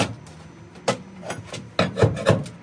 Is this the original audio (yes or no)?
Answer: yes